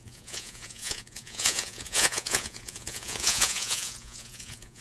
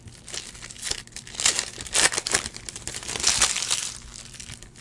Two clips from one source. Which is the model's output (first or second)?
first